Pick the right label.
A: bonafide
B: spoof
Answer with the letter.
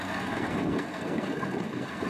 B